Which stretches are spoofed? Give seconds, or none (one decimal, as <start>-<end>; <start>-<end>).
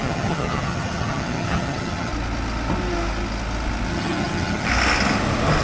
0.0-2.1; 3.9-4.7